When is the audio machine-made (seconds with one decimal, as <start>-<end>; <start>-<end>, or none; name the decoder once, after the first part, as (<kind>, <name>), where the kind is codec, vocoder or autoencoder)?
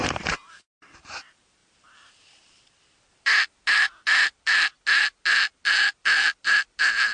0.0-0.6 (vocoder, BigVGAN v2)